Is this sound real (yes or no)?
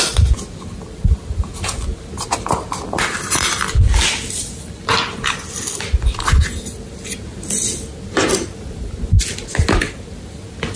yes